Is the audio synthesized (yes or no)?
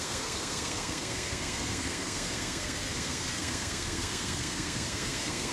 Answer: yes